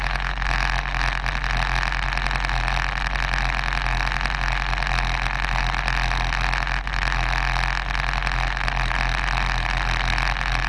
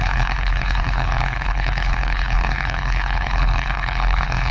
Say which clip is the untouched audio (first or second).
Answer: first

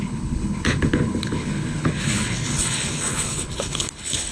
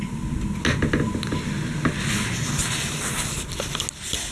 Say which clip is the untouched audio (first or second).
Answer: second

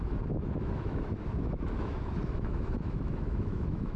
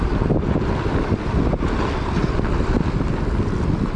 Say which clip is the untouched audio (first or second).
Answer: second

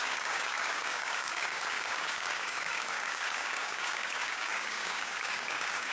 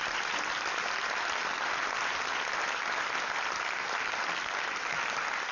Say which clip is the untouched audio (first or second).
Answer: second